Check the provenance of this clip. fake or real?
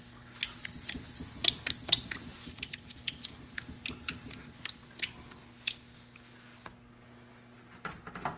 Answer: real